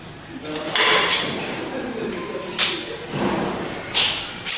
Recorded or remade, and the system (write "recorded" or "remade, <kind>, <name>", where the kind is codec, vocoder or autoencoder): recorded